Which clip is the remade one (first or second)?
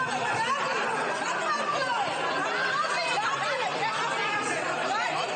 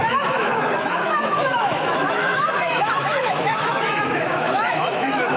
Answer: second